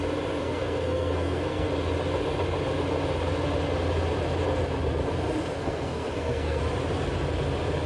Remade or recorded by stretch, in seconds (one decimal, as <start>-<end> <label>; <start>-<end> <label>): 0.0-0.4 recorded; 0.4-1.7 remade; 1.7-5.6 recorded; 5.6-6.6 remade; 6.6-7.9 recorded